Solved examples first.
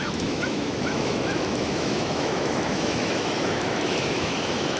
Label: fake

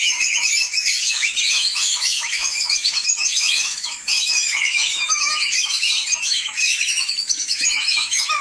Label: fake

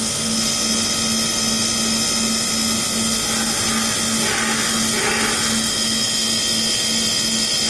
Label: real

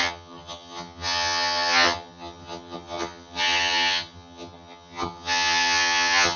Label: fake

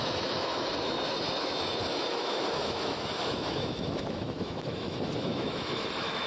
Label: fake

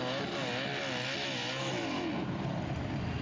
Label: real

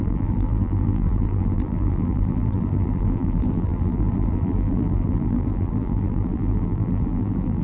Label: fake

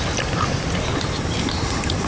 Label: real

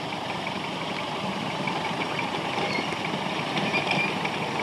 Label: fake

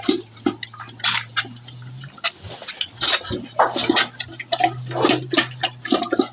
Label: real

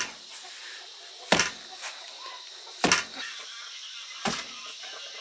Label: real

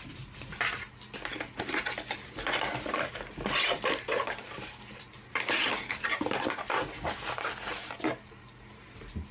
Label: real